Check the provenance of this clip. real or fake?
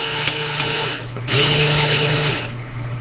fake